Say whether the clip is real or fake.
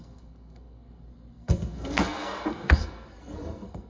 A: fake